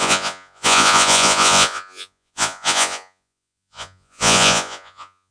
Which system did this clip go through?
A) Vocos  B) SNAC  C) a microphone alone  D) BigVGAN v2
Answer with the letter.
A